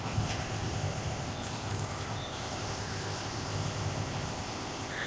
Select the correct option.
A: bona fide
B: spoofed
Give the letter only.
B